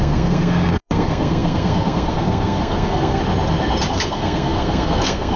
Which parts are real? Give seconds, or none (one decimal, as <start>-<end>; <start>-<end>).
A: 3.2-3.9